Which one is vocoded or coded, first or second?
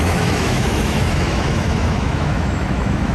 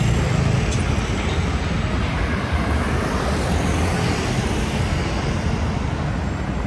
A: first